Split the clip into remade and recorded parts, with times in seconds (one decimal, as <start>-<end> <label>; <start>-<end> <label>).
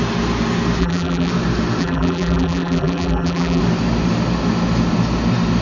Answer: 0.0-0.8 recorded; 0.8-1.3 remade; 1.3-1.8 recorded; 1.8-3.6 remade; 3.6-5.6 recorded